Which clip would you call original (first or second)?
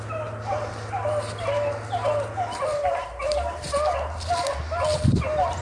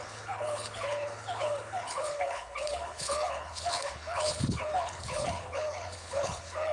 first